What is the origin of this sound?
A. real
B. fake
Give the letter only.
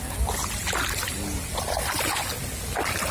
A